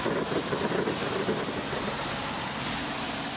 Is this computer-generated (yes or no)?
yes